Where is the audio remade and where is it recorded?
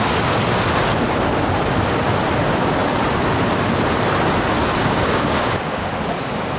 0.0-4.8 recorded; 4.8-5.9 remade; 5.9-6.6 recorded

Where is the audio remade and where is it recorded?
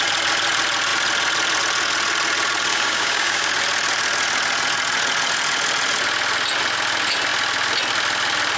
0.0-2.7 recorded; 2.7-3.5 remade; 3.5-8.6 recorded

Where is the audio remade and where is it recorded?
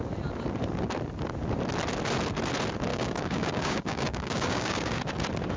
0.0-2.9 recorded; 2.9-5.0 remade; 5.0-5.6 recorded